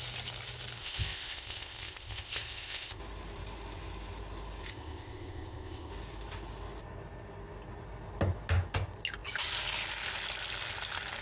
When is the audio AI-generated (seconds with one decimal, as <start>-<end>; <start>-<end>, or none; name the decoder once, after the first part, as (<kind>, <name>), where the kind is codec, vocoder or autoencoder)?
0.8-3.0 (codec, ZipCodec); 4.7-5.9